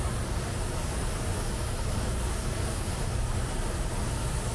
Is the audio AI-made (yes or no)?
no